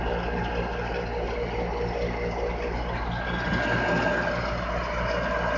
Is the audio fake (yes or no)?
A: no